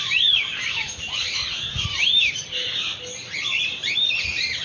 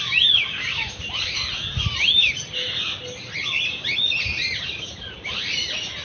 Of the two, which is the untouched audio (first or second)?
second